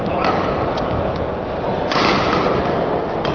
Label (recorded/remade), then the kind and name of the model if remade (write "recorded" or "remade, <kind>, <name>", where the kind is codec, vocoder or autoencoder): remade, vocoder, BigVGAN v2